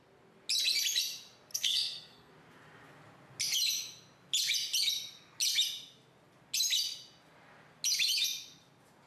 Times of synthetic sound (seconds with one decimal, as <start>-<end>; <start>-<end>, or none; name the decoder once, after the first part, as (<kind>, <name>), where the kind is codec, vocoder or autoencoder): 1.5-2.3 (codec, SNAC)